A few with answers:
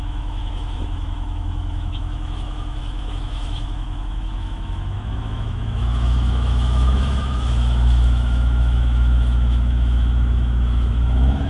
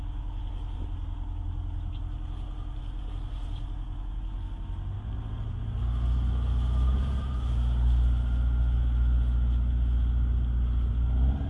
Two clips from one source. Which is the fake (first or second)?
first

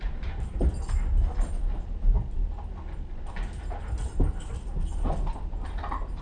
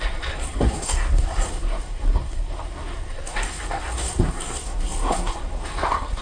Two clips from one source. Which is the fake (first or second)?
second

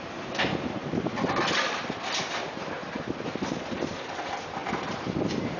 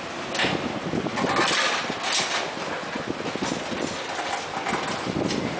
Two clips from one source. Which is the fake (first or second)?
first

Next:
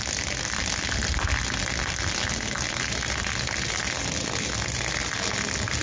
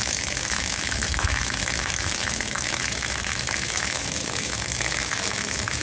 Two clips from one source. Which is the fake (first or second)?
second